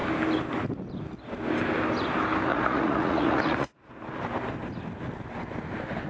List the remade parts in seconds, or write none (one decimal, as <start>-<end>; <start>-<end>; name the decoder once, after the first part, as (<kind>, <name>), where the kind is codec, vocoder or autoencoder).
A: 2.5-3.9 (vocoder, Vocos)